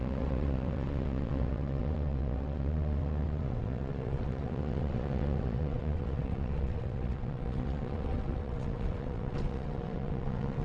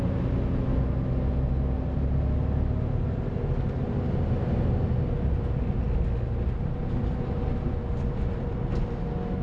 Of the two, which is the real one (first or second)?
second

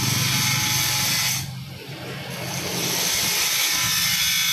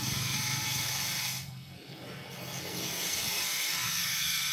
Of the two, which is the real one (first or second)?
first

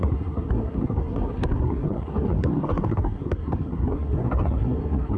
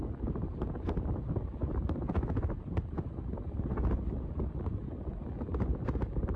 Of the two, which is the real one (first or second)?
second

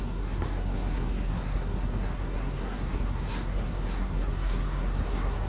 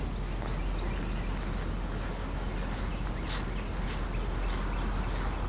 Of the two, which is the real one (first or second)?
second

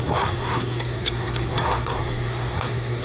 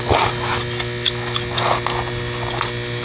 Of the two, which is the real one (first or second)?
second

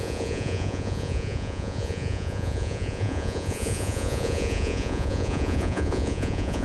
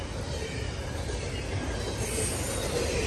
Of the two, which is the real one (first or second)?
second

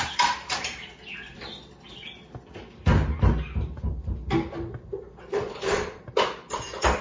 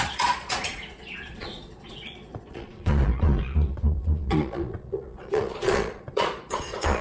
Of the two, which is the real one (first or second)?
first